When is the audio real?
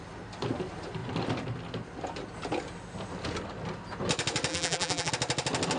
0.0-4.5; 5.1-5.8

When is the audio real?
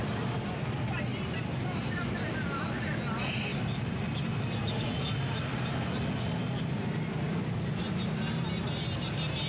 0.0-1.1; 2.6-9.5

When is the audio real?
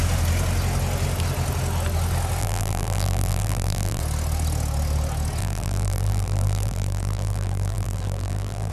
0.0-2.4; 4.0-5.4